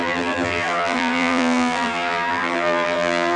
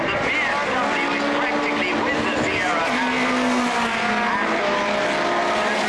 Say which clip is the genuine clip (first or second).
second